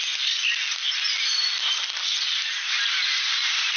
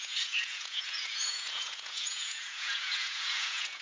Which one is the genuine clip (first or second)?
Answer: first